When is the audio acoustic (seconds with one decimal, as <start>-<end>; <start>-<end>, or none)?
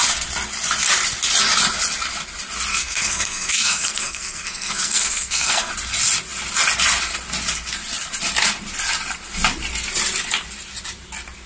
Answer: 0.0-2.7; 5.7-11.5